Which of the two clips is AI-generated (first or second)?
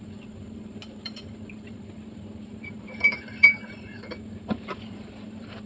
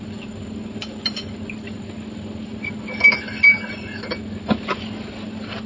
first